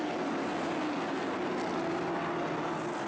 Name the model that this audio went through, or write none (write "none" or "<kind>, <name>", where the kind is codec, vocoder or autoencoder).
none